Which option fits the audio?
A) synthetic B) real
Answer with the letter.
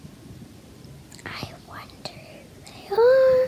B